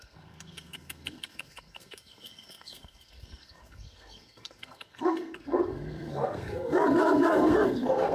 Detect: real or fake fake